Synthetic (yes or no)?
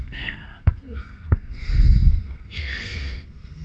yes